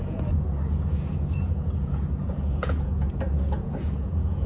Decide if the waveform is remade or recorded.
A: remade